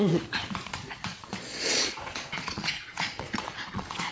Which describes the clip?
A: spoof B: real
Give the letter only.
A